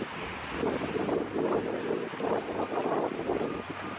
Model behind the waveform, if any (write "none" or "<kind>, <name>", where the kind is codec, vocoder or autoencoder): none